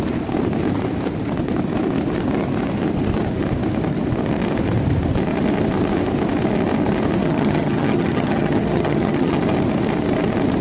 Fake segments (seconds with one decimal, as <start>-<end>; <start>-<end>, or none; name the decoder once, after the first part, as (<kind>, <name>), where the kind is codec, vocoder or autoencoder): 7.2-9.4 (vocoder, HiFi-GAN)